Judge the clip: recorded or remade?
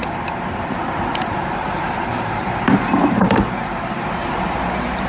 remade